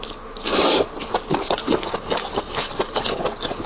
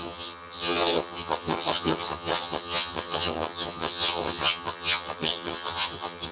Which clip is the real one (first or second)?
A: first